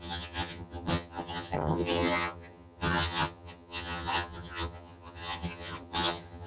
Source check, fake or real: fake